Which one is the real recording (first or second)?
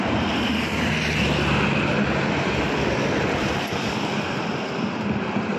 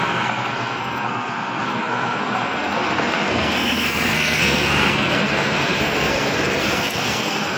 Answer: first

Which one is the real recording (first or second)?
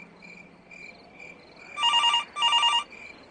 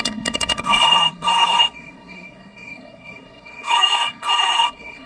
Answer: first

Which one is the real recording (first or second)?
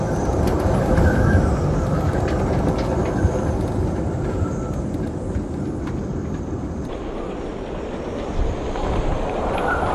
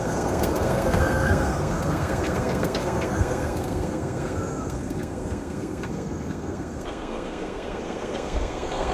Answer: first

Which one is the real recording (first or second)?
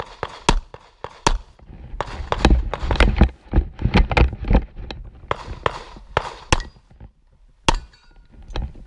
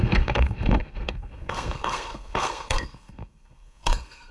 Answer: first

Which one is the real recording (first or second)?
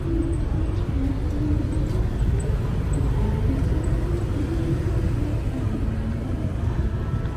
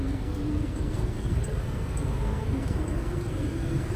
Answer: first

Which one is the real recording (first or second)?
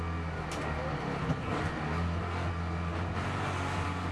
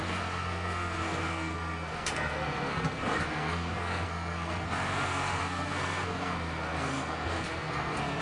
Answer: first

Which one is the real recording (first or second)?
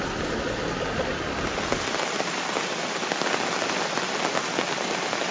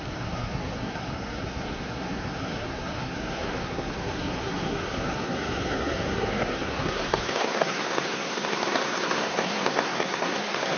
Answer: first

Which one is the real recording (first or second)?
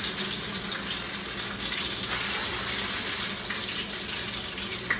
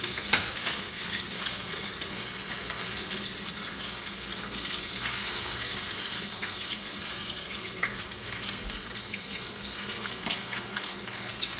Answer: first